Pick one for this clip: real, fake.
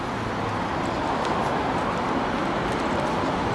real